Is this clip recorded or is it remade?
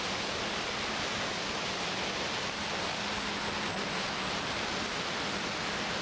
recorded